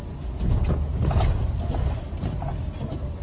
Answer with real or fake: real